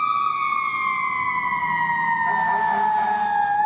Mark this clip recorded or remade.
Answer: recorded